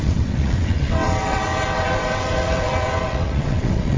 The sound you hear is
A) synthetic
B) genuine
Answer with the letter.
A